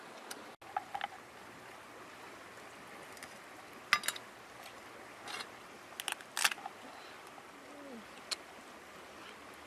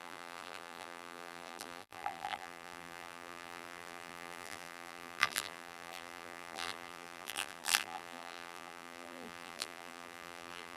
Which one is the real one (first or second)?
first